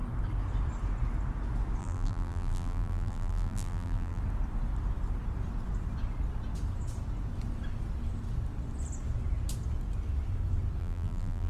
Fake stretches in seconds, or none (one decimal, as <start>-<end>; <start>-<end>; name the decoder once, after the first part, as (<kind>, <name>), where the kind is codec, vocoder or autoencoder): 1.8-4.2 (vocoder, BigVGAN v2); 10.8-11.5